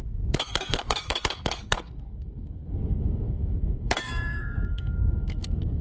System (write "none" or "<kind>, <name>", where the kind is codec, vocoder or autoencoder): codec, SNAC